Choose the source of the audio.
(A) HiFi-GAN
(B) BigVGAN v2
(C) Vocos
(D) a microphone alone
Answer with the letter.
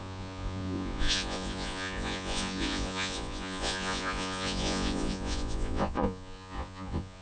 C